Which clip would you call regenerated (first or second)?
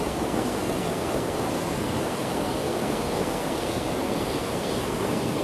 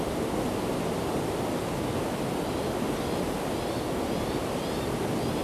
first